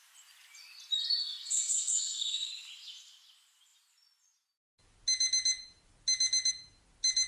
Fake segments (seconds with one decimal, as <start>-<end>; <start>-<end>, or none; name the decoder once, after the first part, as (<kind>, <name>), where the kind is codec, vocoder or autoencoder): 1.2-2.5 (codec, SNAC)